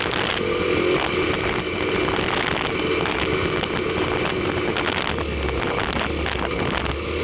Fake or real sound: real